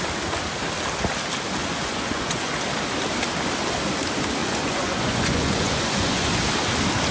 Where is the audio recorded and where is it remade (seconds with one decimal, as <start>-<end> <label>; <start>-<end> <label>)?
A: 0.0-1.6 recorded; 1.6-2.5 remade; 2.5-4.4 recorded; 4.4-6.3 remade; 6.3-7.1 recorded